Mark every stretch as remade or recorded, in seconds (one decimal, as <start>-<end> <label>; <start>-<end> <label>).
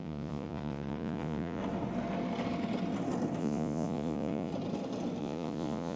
0.0-1.6 remade; 1.6-3.4 recorded; 3.4-4.5 remade; 4.5-5.2 recorded; 5.2-6.0 remade